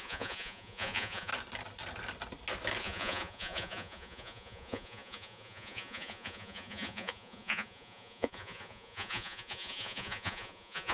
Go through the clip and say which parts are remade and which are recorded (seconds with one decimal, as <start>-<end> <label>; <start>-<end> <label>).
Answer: 0.0-1.3 remade; 1.3-2.8 recorded; 2.8-10.9 remade